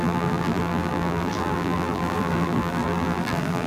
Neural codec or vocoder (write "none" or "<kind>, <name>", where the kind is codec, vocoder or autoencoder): vocoder, BigVGAN v2